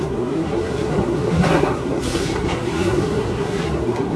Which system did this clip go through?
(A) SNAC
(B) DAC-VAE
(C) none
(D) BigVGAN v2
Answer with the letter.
A